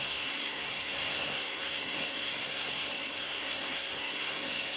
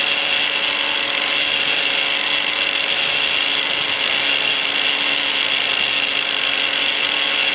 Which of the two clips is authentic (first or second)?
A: second